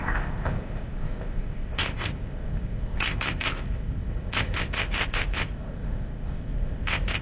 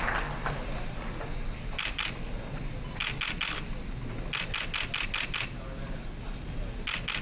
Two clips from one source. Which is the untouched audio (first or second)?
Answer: second